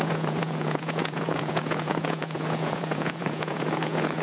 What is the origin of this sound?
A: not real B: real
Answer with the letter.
A